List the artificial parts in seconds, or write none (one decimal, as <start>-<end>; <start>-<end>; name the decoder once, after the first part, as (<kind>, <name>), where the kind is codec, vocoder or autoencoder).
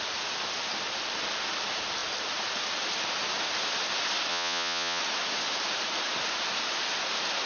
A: 4.3-5.0 (vocoder, Vocos)